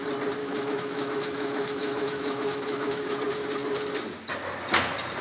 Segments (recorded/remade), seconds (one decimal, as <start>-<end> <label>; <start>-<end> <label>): 0.0-0.4 recorded; 0.4-3.1 remade; 3.1-5.2 recorded

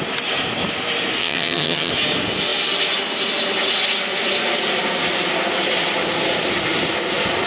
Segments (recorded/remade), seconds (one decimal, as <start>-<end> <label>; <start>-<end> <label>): 0.0-1.2 recorded; 1.2-1.9 remade; 1.9-7.5 recorded